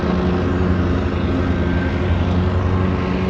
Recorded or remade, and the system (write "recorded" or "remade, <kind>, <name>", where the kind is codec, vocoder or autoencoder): recorded